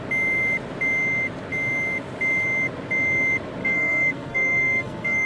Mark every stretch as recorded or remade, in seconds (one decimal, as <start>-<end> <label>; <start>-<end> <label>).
0.0-3.6 recorded; 3.6-5.3 remade